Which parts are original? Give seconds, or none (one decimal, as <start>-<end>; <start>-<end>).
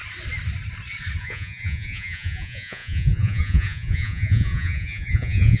0.0-1.2